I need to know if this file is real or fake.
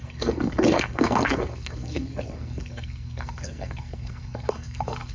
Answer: fake